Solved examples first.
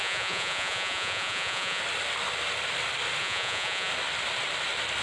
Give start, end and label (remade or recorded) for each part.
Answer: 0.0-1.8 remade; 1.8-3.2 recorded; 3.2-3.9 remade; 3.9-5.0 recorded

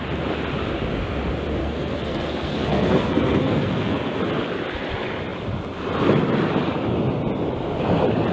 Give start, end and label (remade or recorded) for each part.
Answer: 0.0-1.6 recorded; 1.6-4.2 remade; 4.2-8.3 recorded

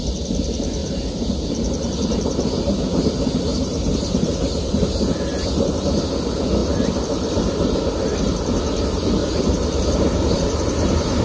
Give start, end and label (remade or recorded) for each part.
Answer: 0.0-0.8 recorded; 0.8-5.1 remade; 5.1-9.2 recorded; 9.2-11.2 remade

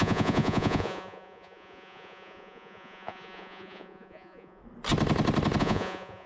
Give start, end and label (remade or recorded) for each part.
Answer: 0.0-4.6 remade; 4.6-5.6 recorded; 5.6-6.3 remade